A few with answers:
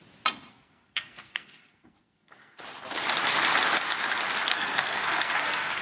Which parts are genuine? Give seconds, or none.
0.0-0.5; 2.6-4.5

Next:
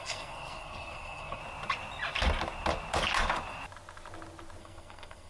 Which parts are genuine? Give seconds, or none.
1.4-4.6

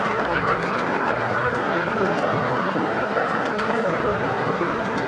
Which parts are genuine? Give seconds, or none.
none

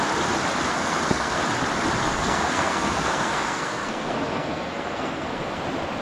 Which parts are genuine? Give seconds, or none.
0.0-0.7; 1.4-2.0; 5.6-6.0

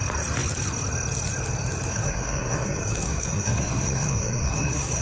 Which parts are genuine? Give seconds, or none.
0.0-1.9

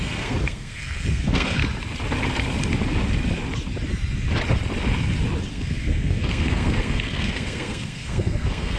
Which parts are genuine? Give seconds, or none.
1.6-5.5

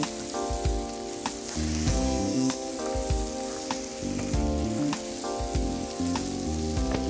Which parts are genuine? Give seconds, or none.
0.0-1.9; 2.7-7.1

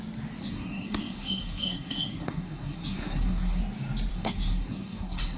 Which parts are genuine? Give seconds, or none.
0.0-0.4; 3.6-4.1